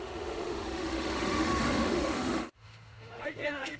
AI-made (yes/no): yes